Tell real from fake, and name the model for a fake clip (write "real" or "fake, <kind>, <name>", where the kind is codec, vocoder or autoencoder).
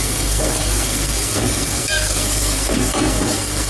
fake, codec, SNAC